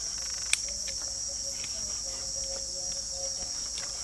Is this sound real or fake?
real